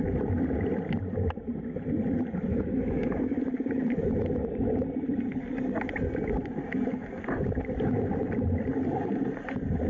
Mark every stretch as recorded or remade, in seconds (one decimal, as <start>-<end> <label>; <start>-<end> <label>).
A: 0.0-2.5 recorded; 2.5-3.4 remade; 3.4-9.9 recorded